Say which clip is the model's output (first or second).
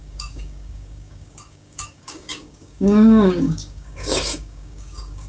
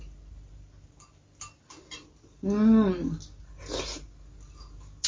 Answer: first